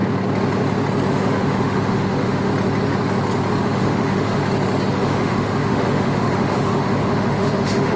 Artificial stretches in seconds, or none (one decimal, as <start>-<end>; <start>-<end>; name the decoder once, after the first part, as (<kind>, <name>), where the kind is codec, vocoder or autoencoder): 1.1-2.5 (autoencoder, DAC-VAE); 3.6-4.4; 4.9-8.0